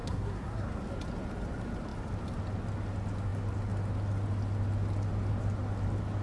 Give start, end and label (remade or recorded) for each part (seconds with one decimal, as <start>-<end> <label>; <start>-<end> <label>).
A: 0.0-0.8 remade; 0.8-6.2 recorded